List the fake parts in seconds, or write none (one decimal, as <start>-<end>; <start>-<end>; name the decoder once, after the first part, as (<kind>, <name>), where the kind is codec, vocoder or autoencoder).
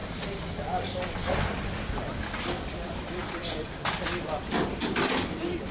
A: 1.6-5.7 (vocoder, BigVGAN v2)